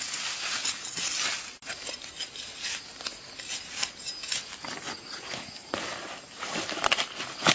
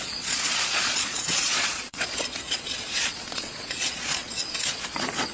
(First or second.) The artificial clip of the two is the second